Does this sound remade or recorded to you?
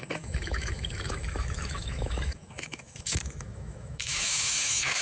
remade